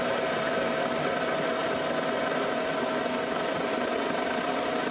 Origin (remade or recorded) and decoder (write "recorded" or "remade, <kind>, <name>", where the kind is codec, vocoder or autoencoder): recorded